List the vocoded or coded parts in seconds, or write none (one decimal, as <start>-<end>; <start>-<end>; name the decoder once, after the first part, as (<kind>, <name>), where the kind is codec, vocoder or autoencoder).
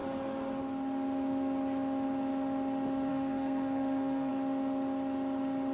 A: 3.1-4.3 (codec, SNAC)